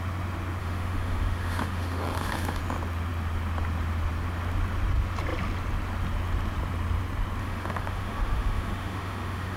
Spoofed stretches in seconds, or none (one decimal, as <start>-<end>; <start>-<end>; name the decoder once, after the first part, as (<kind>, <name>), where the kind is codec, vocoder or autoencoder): 0.6-2.6 (autoencoder, DAC-VAE); 7.4-9.6